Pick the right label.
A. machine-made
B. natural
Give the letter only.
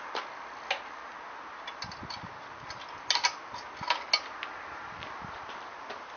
B